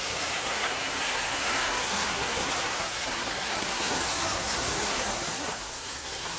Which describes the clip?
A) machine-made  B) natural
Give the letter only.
A